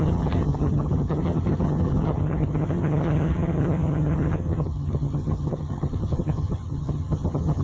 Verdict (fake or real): fake